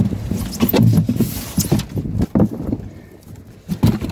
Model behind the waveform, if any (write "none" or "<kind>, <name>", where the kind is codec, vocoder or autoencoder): none